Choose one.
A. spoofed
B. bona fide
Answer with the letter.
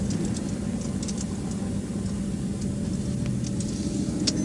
B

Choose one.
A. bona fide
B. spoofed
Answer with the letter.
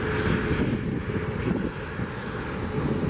A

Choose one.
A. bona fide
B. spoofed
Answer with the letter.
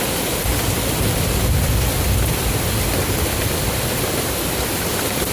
B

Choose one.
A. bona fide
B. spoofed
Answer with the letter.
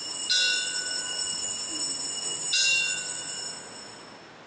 A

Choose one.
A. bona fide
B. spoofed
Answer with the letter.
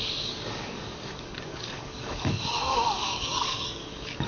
B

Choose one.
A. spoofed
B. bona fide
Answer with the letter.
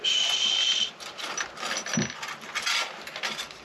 B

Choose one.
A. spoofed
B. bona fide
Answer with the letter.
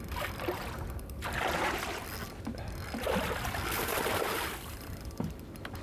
B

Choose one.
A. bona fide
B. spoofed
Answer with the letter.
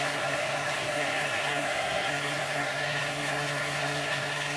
B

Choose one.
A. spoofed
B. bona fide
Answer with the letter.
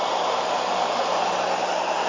B